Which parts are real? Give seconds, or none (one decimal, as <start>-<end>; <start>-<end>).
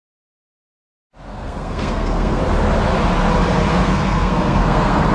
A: 0.0-1.3; 2.4-3.7